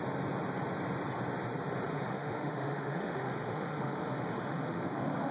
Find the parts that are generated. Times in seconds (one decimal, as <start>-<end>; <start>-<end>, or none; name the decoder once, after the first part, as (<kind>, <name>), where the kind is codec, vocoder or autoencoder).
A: 1.9-5.3 (autoencoder, DAC-VAE)